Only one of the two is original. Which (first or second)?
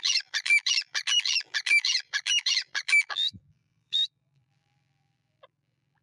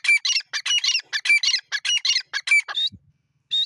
second